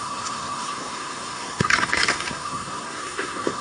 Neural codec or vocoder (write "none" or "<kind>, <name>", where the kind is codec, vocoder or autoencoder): codec, SNAC